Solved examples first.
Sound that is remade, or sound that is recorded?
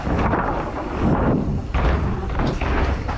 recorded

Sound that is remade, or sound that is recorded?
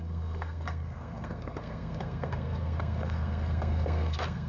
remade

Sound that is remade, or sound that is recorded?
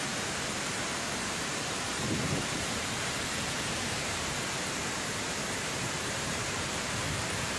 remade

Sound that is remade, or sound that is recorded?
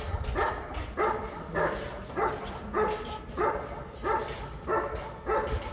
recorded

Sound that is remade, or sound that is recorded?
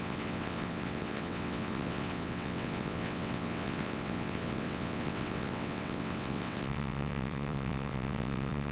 remade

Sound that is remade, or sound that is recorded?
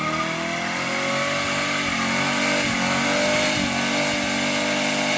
recorded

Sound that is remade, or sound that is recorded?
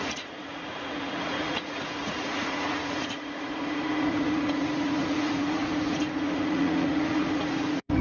remade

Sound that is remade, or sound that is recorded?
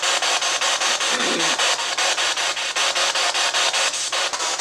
recorded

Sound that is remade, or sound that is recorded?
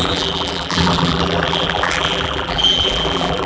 remade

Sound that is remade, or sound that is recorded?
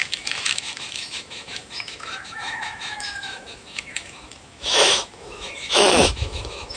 remade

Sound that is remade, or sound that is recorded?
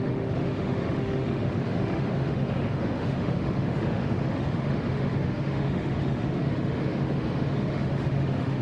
remade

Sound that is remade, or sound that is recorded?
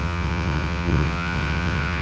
remade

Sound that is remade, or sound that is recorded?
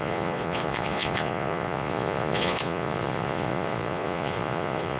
remade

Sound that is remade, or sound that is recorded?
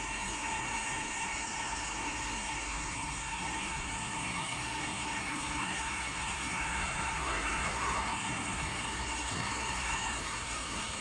remade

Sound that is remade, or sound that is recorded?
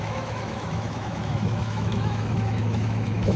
remade